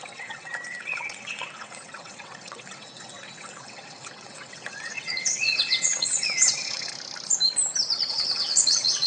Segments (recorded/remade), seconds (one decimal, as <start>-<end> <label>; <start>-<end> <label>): 0.0-6.9 remade; 6.9-8.1 recorded; 8.1-9.1 remade